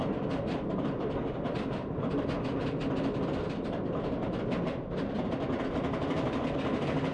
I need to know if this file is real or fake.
real